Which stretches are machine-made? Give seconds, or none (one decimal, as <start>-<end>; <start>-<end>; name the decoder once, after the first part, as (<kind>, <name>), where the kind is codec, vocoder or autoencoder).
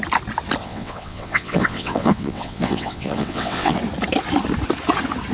0.6-3.8 (vocoder, WaveNeXt)